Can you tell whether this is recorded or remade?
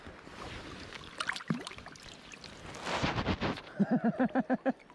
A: recorded